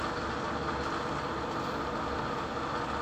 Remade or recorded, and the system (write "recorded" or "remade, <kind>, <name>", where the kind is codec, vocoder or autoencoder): recorded